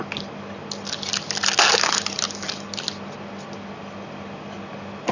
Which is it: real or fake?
real